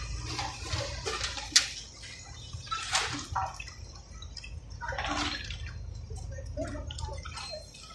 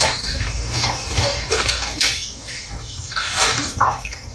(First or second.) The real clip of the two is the first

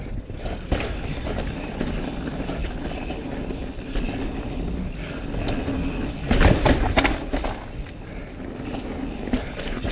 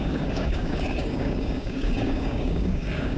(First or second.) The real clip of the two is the first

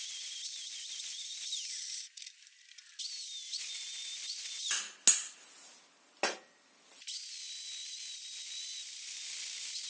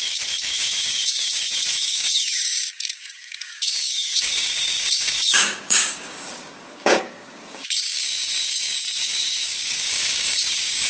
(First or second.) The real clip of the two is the first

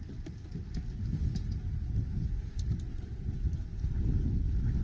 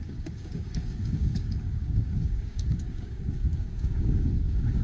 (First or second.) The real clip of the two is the first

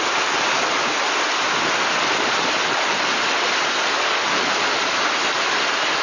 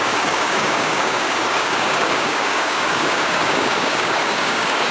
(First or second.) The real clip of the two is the first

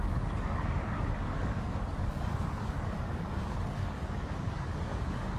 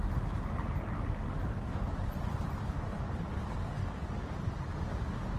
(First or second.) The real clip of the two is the second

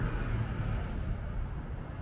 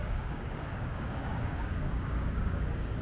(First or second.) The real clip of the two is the first